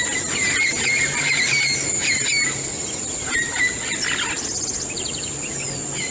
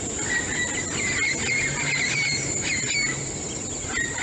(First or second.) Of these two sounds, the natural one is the first